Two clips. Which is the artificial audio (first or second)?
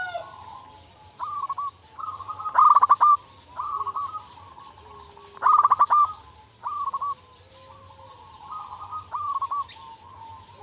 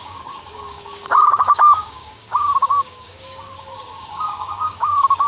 second